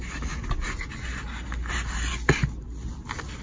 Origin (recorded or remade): recorded